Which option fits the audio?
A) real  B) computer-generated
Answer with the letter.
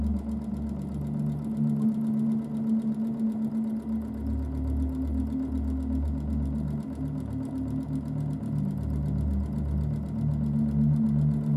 A